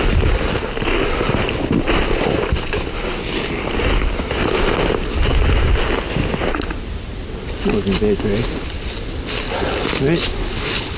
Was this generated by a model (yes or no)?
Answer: no